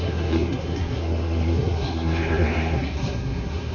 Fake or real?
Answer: fake